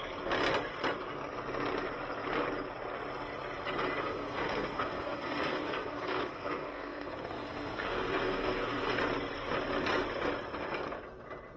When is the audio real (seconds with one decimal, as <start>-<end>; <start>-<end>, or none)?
0.0-4.0; 9.0-11.6